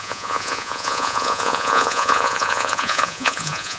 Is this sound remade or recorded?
remade